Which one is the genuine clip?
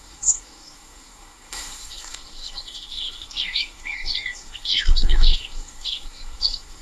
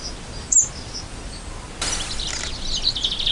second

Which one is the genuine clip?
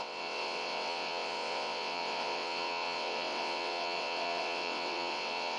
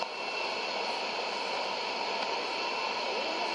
second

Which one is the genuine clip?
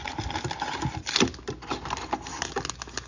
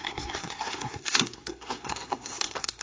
first